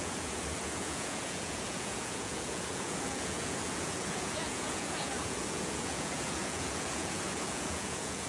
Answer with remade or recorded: remade